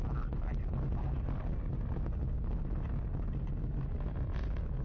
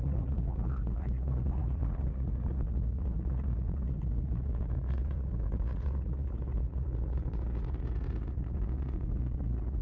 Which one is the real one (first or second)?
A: first